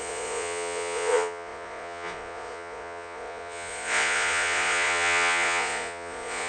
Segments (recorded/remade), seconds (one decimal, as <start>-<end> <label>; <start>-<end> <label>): 0.0-6.5 remade